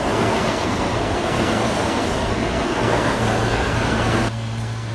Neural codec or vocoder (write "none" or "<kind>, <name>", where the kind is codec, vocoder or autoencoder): codec, SNAC